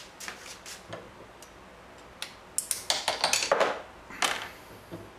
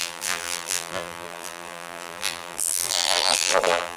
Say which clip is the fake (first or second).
second